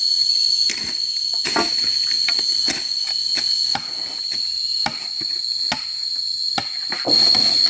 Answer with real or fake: real